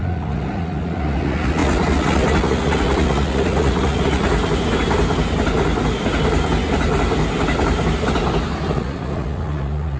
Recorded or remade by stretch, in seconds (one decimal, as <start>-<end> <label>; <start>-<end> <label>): 0.0-4.3 remade; 4.3-8.7 recorded; 8.7-10.0 remade